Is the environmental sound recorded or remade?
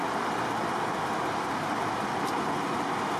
recorded